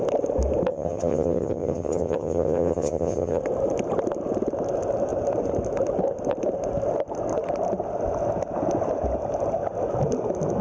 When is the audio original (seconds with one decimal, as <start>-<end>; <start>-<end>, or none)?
0.0-0.7; 3.4-10.6